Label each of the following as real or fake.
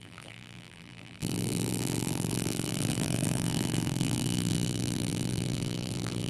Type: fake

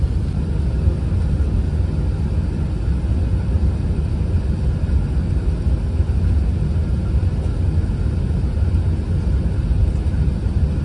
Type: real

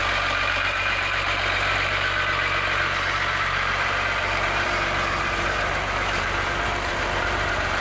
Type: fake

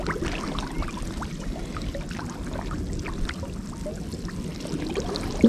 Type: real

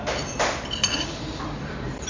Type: fake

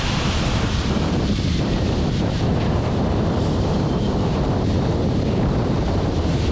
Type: fake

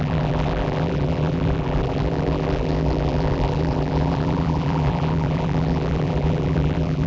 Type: fake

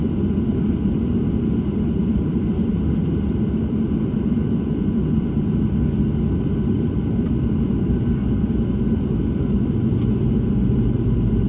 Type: fake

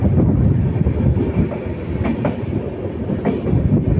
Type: fake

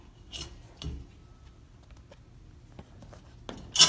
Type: real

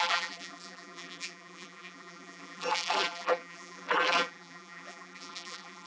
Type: fake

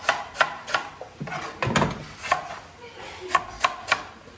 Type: real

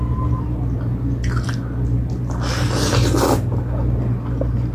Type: real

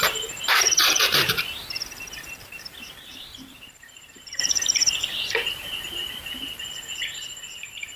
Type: fake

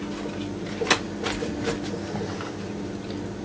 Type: real